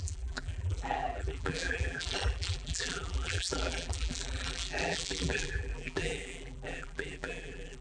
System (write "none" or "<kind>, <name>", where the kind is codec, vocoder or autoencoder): vocoder, BigVGAN v2